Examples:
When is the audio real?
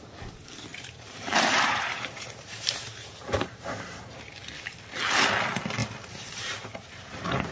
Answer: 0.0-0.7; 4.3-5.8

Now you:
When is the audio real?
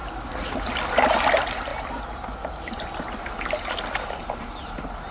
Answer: 0.0-5.1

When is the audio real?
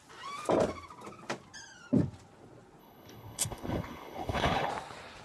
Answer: 0.0-2.8; 4.7-5.2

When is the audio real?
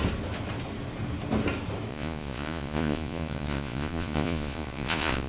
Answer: 0.0-1.9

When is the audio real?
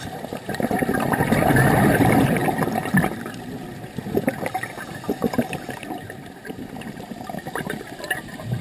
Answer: 2.4-2.9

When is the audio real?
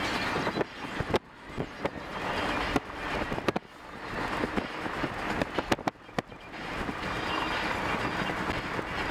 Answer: 0.0-9.1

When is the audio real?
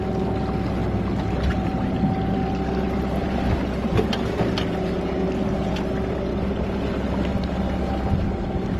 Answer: 0.0-8.8